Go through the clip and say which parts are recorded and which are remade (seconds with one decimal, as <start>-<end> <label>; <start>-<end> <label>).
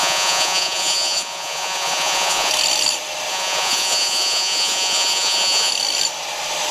0.0-2.5 remade; 2.5-3.3 recorded; 3.3-5.7 remade; 5.7-6.7 recorded